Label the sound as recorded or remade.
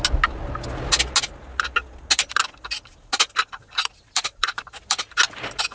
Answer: recorded